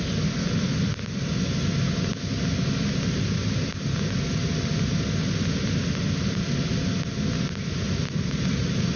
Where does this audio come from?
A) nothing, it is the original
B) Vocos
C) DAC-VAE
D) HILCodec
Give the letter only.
A